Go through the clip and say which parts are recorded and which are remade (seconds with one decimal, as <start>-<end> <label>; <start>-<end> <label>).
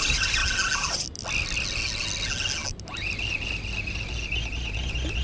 0.0-5.2 recorded